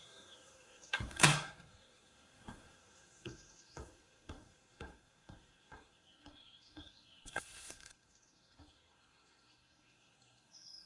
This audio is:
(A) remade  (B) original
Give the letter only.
A